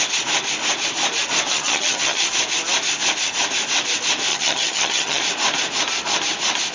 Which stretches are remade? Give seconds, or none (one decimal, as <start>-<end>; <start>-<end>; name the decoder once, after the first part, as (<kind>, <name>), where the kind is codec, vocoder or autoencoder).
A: 1.5-2.3 (vocoder, HiFi-GAN); 4.3-5.2